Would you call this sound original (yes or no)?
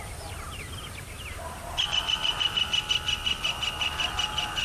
yes